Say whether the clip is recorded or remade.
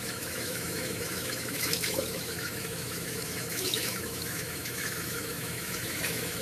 remade